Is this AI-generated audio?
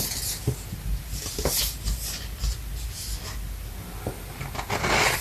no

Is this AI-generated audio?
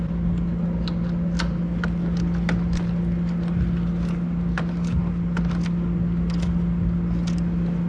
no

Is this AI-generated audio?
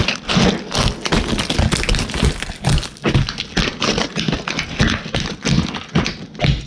no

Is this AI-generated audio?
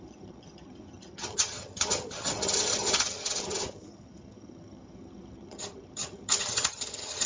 yes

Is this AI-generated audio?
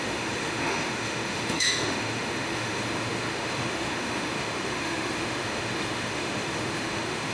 yes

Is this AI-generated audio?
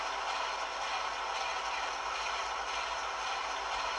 no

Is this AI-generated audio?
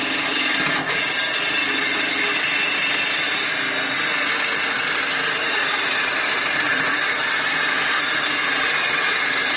no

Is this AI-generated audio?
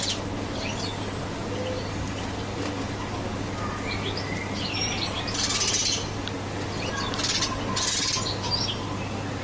no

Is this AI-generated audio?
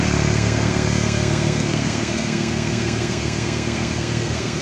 yes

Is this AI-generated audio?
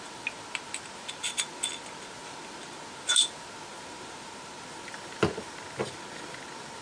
no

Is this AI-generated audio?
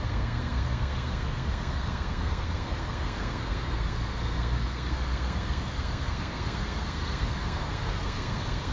yes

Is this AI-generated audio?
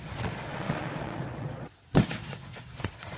yes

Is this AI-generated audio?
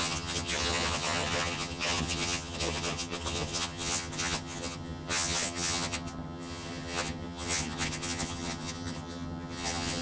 yes